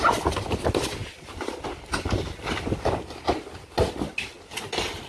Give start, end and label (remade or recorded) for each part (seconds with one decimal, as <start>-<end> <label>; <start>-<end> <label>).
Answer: 0.0-5.1 recorded